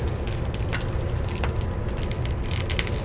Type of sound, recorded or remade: recorded